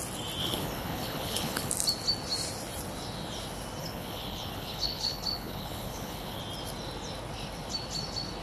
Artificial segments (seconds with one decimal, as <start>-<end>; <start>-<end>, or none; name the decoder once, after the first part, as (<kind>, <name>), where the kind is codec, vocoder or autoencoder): 0.4-1.7 (codec, HILCodec); 3.8-6.4